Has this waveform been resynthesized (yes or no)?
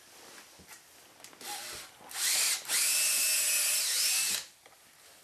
no